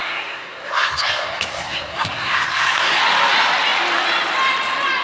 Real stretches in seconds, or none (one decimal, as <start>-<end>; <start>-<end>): 3.0-5.0